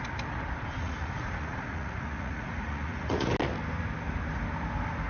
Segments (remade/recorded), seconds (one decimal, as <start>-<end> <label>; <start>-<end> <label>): 0.0-0.8 recorded; 0.8-3.3 remade; 3.3-5.1 recorded